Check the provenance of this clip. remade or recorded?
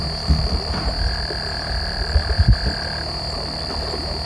recorded